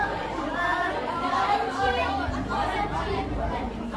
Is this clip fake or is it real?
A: fake